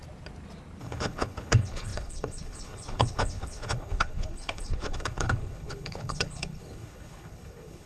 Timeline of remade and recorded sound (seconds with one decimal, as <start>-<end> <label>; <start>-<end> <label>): 0.0-0.8 recorded; 0.8-7.9 remade